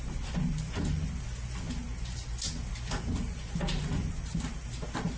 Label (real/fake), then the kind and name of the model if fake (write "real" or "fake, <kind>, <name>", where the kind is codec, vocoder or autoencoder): real